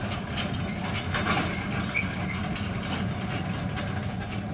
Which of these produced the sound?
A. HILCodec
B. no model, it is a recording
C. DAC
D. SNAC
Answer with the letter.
B